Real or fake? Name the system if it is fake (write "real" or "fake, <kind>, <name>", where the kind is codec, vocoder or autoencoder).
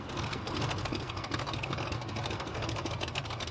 fake, codec, SNAC